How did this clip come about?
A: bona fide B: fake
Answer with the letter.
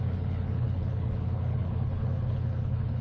B